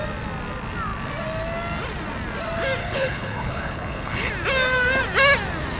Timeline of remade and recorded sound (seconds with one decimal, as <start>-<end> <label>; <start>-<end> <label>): 0.0-2.8 recorded; 2.8-4.3 remade; 4.3-5.8 recorded